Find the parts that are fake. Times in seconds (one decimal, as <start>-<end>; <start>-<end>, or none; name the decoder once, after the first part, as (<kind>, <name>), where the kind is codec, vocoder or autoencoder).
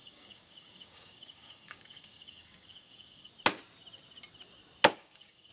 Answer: 0.0-3.3 (codec, DAC); 4.9-5.5